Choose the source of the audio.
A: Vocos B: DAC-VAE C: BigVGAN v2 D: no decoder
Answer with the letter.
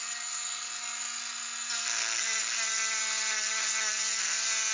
D